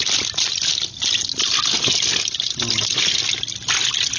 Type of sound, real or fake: real